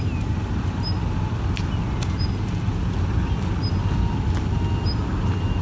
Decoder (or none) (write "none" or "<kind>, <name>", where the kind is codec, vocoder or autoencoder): none